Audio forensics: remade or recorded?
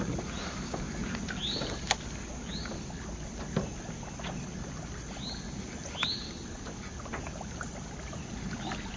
recorded